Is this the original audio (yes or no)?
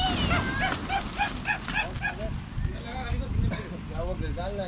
yes